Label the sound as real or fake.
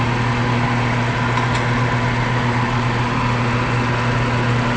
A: real